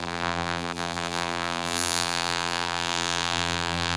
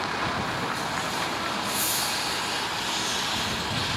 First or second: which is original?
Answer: second